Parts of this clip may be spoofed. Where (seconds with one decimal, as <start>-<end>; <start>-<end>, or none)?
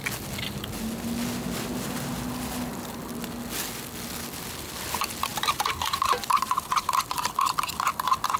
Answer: 5.3-6.9